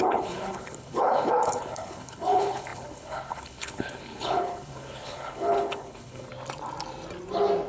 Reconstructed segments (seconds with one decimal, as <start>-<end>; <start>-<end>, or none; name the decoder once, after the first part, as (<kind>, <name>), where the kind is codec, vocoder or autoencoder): 0.0-6.3 (codec, HILCodec)